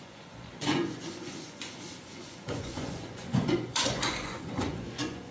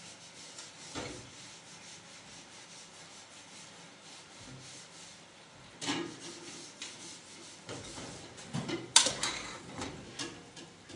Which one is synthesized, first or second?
first